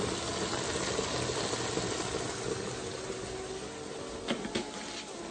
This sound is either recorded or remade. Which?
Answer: recorded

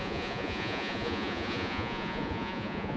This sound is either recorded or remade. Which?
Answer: remade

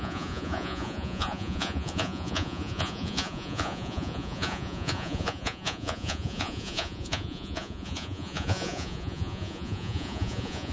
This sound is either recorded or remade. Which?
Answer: remade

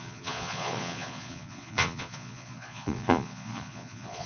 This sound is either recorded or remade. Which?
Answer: remade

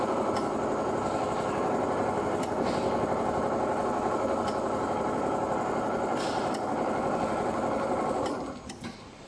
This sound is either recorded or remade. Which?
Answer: recorded